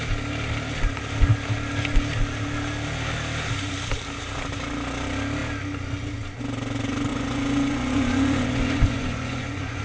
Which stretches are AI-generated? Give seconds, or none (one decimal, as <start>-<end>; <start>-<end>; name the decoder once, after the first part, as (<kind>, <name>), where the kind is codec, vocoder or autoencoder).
7.1-9.8 (vocoder, Vocos)